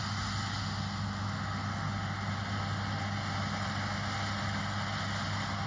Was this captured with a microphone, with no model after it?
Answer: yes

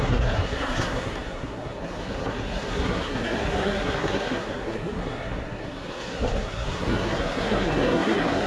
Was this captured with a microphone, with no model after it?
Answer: no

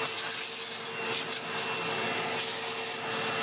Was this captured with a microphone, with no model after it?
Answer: yes